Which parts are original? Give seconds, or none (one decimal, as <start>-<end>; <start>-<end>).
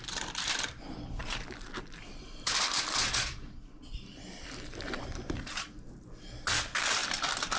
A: 1.2-2.0; 7.0-7.6